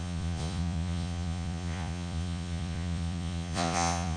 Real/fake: fake